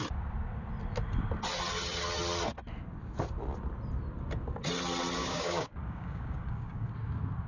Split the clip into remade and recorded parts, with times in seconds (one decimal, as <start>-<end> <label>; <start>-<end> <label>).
0.0-5.2 recorded; 5.2-6.9 remade; 6.9-7.5 recorded